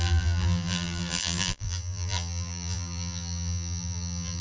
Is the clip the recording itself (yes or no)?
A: no